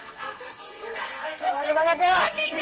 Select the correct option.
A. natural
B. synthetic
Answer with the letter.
B